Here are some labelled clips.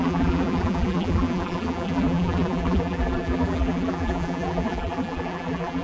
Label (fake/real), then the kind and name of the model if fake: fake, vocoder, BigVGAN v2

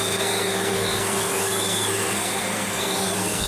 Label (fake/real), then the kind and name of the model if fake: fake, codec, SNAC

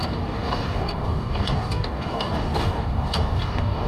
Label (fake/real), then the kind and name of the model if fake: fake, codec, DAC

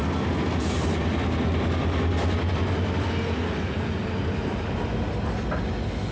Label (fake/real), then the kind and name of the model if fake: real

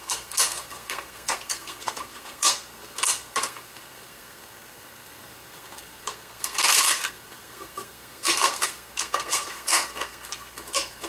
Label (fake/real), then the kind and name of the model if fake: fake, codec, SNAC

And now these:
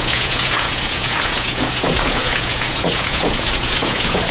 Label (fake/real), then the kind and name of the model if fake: fake, vocoder, Vocos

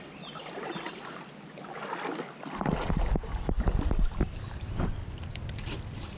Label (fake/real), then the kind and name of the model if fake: real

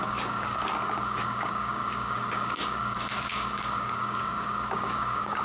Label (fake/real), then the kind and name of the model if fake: fake, codec, DAC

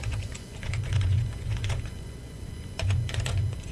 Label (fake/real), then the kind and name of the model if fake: fake, vocoder, Vocos